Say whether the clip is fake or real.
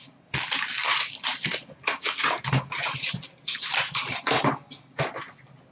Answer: real